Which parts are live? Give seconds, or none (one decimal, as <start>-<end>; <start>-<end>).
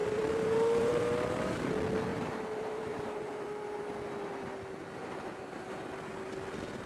1.7-2.1; 3.8-5.0; 5.8-6.9